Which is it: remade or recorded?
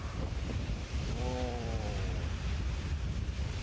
remade